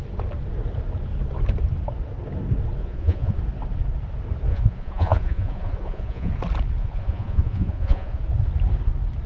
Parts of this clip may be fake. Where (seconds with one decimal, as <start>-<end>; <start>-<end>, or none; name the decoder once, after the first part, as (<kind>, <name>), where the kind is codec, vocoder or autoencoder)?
2.8-3.4 (vocoder, Vocos); 4.5-6.3; 6.8-8.2